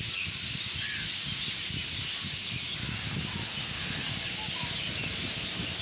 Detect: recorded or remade recorded